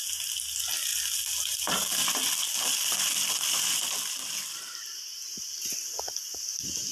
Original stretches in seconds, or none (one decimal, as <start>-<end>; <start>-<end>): 0.0-6.9